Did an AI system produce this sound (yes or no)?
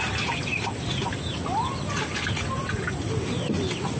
no